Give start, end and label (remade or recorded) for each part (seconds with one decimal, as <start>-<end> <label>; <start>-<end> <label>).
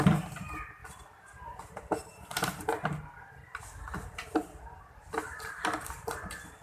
0.0-0.8 remade; 0.8-1.6 recorded; 1.6-6.6 remade